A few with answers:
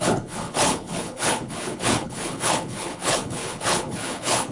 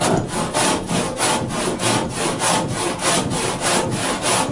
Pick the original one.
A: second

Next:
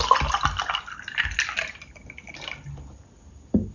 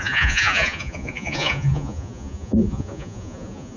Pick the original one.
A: first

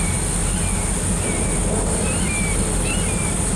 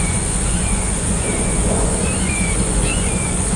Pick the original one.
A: first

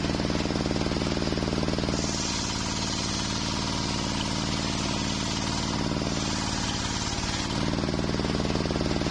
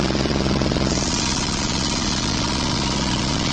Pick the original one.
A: first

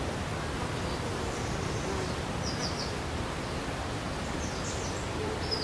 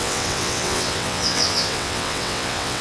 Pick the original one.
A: first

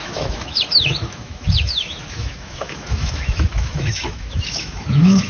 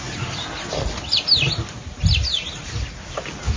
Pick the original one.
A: second